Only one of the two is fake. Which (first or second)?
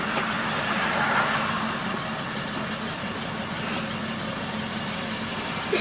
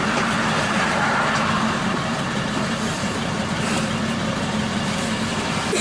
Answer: second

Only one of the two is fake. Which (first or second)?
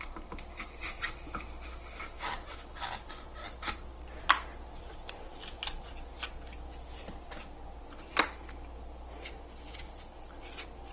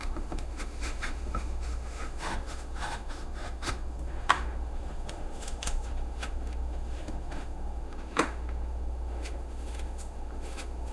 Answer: second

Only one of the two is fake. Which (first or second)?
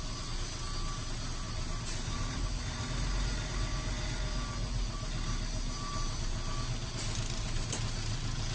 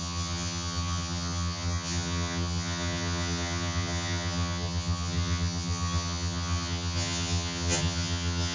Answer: second